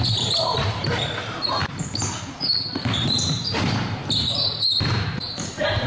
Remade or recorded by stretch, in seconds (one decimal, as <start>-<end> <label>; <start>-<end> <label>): 0.0-4.0 remade; 4.0-5.0 recorded; 5.0-5.9 remade